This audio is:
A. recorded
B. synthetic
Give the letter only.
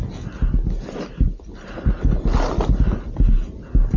A